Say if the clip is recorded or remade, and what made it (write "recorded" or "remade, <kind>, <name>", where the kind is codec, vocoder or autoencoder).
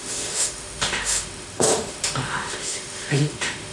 remade, autoencoder, DAC-VAE